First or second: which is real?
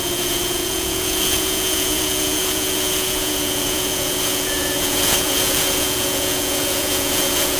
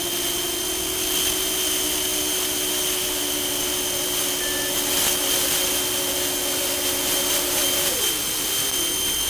second